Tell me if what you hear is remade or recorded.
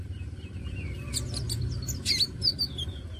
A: recorded